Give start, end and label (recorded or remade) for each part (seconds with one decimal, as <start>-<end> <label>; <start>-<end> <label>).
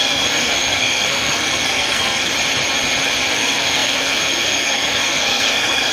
0.0-2.3 remade; 2.3-3.3 recorded; 3.3-5.9 remade